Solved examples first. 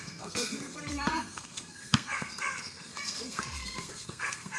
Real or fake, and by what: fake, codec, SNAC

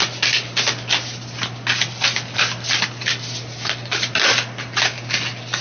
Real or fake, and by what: real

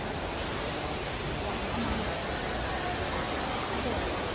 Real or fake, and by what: real